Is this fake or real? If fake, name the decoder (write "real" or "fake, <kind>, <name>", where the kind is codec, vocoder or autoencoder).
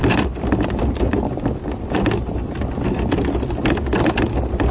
real